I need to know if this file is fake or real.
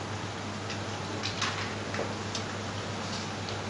real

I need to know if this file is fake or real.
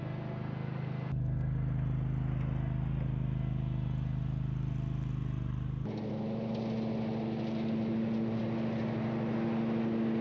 real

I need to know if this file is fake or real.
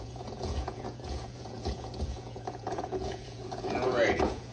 fake